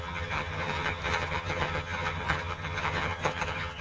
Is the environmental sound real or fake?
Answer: fake